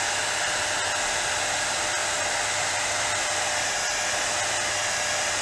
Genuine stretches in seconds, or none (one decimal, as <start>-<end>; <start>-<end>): 0.0-5.4